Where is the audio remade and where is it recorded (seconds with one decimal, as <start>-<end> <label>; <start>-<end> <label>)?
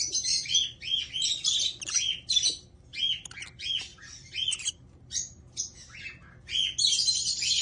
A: 0.0-3.9 recorded; 3.9-4.7 remade; 4.7-7.6 recorded